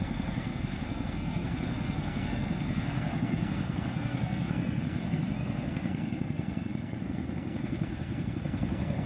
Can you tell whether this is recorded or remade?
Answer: remade